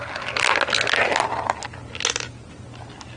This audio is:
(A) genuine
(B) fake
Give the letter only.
A